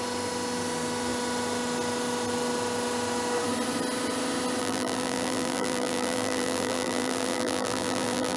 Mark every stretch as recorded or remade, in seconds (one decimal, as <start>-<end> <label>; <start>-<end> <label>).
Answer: 0.0-4.6 recorded; 4.6-8.4 remade